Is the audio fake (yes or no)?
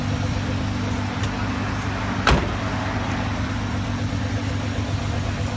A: no